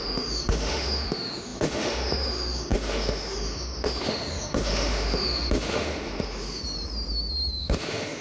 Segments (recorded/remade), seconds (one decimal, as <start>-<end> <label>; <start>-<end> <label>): 0.0-6.6 remade; 6.6-7.6 recorded; 7.6-8.2 remade